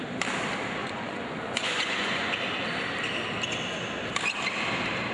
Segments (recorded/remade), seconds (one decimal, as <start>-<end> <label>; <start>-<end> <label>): 0.0-0.8 recorded; 0.8-2.3 remade; 2.3-5.1 recorded